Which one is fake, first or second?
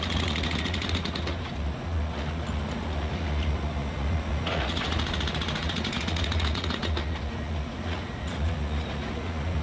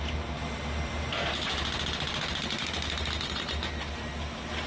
first